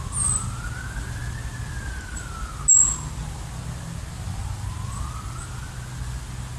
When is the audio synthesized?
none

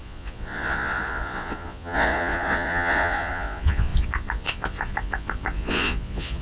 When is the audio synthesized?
0.0-6.4

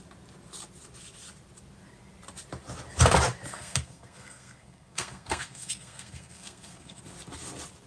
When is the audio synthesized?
3.5-7.0

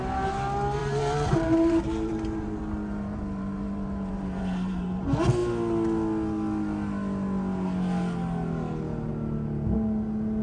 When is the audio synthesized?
0.8-5.0

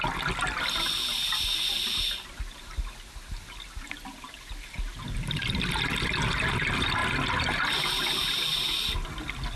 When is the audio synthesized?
none